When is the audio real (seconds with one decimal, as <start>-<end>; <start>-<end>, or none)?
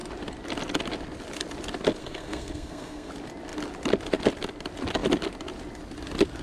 0.0-2.0; 3.1-6.4